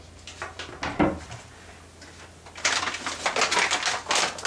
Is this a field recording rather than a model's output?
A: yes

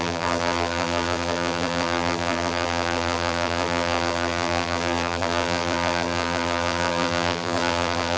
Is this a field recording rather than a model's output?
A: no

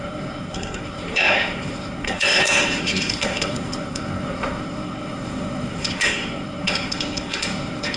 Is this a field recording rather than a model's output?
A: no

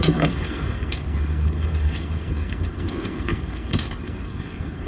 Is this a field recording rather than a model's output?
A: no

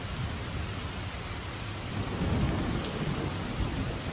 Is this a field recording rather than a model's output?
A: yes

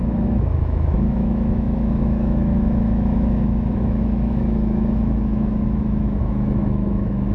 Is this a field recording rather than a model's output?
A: no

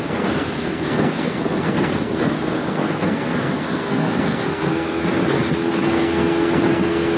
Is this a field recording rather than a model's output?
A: no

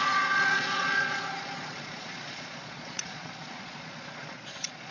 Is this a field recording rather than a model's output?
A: no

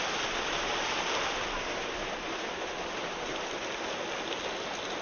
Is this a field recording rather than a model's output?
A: yes